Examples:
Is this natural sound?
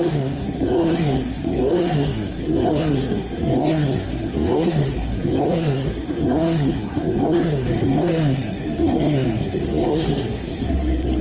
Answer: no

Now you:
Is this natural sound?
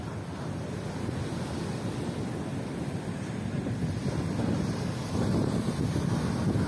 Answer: yes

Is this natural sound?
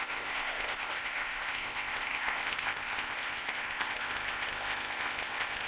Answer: no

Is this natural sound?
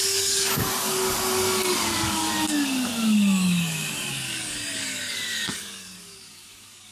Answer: no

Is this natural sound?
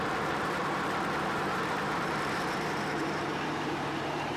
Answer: no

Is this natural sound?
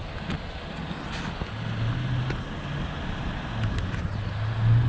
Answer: yes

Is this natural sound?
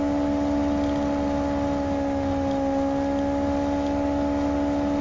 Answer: yes